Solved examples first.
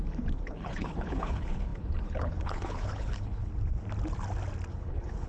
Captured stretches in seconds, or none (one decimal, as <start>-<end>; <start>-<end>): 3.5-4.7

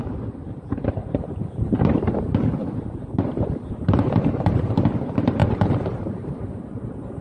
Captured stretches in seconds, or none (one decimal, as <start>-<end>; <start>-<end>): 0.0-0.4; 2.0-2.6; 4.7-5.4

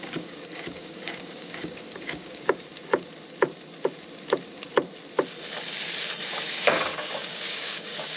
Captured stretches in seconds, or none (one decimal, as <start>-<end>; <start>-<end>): 2.7-6.3

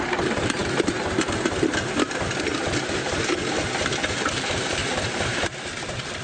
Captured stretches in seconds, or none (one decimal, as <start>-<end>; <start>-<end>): 0.6-4.3

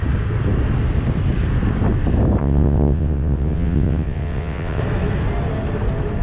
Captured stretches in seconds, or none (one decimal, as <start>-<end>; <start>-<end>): 0.0-2.4; 4.8-6.2

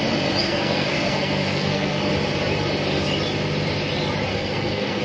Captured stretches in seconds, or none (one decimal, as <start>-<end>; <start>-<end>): 0.0-0.4; 2.1-4.3

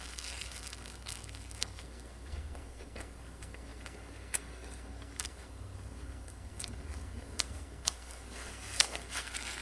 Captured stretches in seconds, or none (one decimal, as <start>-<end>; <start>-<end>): none